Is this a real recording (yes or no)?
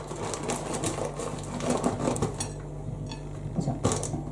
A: yes